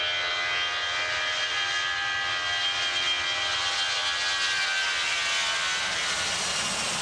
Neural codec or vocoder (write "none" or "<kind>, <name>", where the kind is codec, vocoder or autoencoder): none